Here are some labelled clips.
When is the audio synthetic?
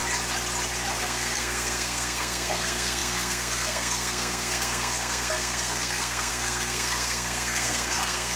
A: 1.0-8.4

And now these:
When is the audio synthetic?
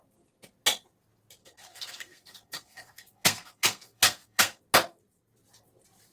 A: 1.4-4.6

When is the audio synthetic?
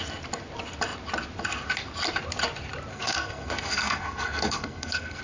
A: 2.9-5.2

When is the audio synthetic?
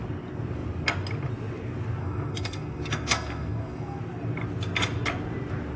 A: 2.0-4.0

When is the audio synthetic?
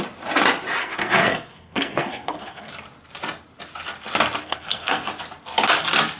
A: 0.8-2.7; 4.4-5.1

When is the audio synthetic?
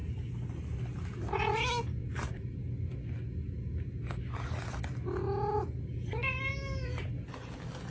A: none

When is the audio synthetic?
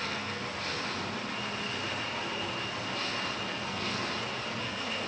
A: 0.0-0.4; 3.5-4.0; 4.6-5.1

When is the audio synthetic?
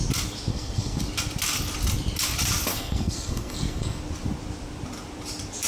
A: 0.5-1.0; 2.7-4.0